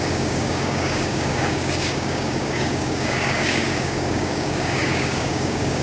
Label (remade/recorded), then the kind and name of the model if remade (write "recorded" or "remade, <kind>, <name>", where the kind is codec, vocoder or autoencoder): remade, codec, DAC